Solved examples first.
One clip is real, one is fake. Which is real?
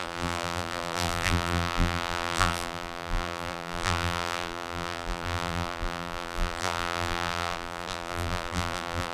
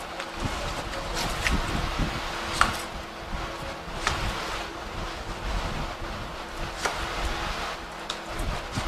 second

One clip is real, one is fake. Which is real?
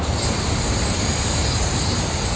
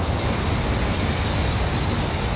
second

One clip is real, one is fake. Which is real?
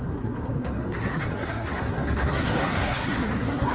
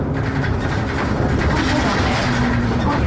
second